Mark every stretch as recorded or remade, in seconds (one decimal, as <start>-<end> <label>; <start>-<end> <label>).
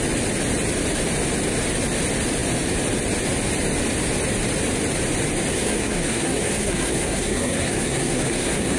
0.0-5.5 recorded; 5.5-8.8 remade